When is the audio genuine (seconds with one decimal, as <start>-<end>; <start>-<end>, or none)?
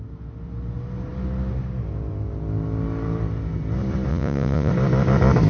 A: 0.0-4.1; 4.7-5.5